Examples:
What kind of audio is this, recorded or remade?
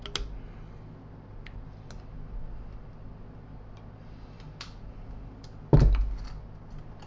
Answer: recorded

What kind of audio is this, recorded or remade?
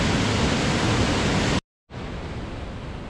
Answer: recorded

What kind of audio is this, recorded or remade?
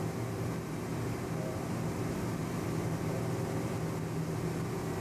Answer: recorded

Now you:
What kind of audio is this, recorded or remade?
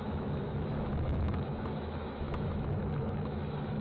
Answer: remade